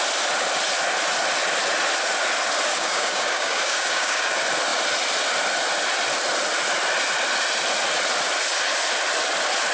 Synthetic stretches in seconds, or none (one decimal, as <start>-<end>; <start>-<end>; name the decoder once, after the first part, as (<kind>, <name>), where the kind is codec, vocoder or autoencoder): 2.7-4.3 (codec, DAC)